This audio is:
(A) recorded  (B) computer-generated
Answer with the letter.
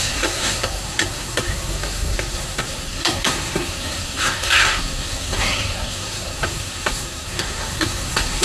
B